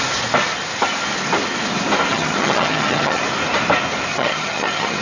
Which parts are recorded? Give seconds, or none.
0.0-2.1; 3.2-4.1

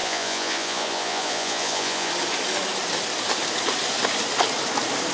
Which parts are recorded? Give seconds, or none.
2.1-5.1

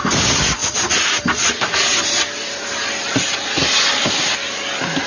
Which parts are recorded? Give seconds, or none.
0.0-5.1

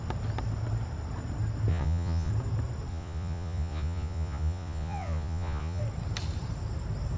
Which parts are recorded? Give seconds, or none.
0.0-1.7; 2.3-2.9; 5.8-7.2

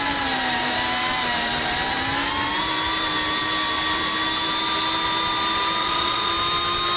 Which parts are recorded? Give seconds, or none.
0.0-5.8; 6.3-7.0

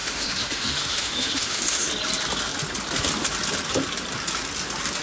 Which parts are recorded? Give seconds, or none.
1.9-5.0